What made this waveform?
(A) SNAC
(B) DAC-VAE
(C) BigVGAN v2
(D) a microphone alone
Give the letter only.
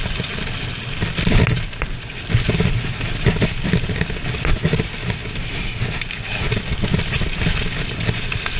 D